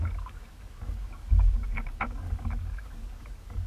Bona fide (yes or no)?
no